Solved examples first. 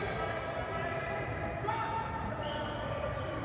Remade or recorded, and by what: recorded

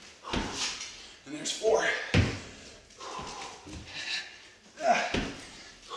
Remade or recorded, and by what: recorded